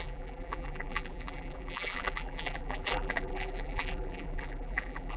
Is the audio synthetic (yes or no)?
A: yes